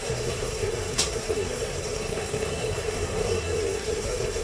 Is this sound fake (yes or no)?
yes